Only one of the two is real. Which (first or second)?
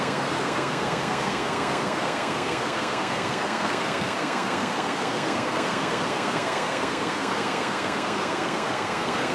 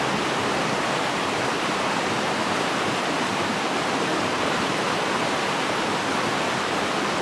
second